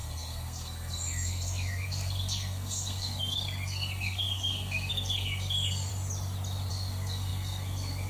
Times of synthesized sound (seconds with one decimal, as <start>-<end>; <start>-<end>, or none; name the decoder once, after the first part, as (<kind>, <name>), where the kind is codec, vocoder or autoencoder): 0.0-5.9 (codec, SNAC); 6.7-8.1